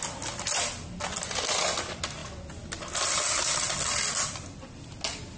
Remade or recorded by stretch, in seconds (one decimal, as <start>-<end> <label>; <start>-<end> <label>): 0.0-5.4 recorded